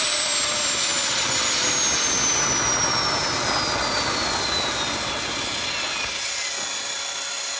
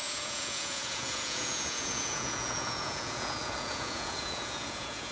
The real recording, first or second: first